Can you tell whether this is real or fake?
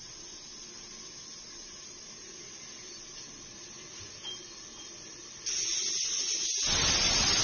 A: real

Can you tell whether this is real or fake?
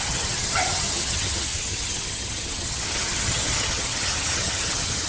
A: fake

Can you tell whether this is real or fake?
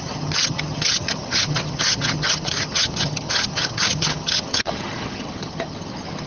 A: fake